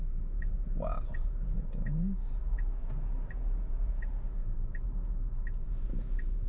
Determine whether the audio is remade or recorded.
remade